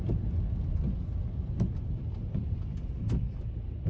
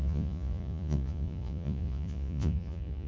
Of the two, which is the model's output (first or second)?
second